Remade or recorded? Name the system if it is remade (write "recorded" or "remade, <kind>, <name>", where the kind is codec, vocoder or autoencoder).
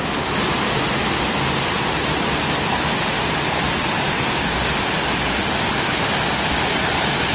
recorded